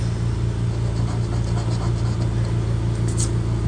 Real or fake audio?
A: real